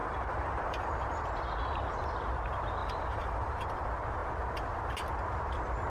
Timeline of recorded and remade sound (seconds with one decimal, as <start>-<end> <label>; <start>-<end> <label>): 0.0-0.9 remade; 0.9-2.8 recorded; 2.8-3.6 remade; 3.6-5.9 recorded